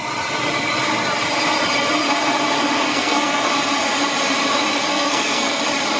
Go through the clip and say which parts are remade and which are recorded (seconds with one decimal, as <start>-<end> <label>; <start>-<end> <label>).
0.0-2.9 recorded; 2.9-3.5 remade; 3.5-4.9 recorded; 4.9-5.6 remade; 5.6-6.0 recorded